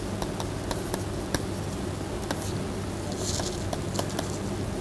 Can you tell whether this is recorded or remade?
recorded